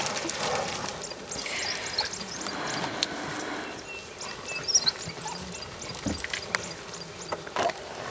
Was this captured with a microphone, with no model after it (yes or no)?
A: yes